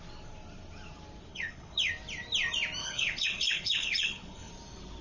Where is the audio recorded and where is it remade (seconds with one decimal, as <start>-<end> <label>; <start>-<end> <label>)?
0.0-1.3 recorded; 1.3-1.9 remade; 1.9-2.8 recorded; 2.8-4.5 remade; 4.5-5.0 recorded